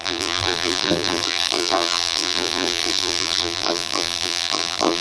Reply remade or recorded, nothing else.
remade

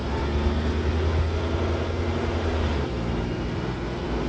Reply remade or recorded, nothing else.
recorded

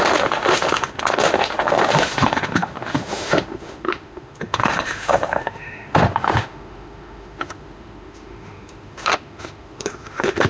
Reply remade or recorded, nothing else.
remade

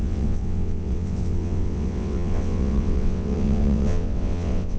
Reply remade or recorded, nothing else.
remade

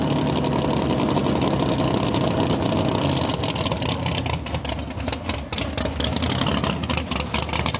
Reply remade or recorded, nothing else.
recorded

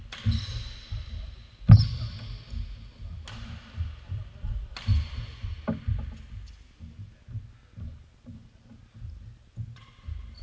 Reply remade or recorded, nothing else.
recorded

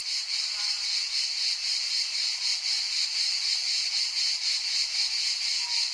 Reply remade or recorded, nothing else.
recorded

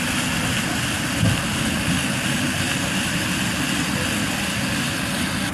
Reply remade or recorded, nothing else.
recorded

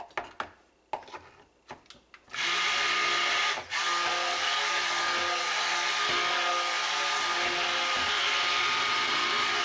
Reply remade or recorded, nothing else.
recorded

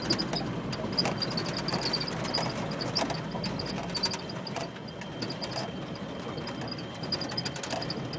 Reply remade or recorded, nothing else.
recorded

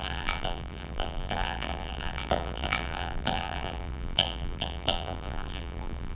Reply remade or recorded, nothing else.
remade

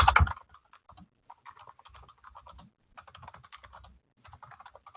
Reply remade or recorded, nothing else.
recorded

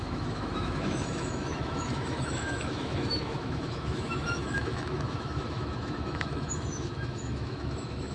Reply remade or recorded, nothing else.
remade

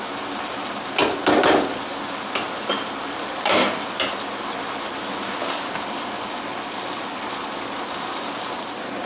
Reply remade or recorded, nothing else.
recorded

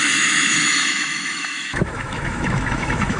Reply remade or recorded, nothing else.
remade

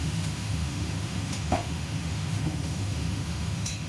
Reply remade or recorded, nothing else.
remade